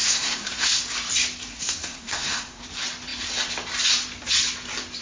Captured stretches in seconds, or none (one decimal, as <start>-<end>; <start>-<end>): 0.8-1.5; 2.6-5.0